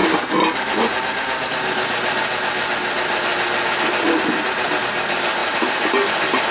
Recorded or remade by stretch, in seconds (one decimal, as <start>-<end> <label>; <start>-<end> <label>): 0.0-6.5 recorded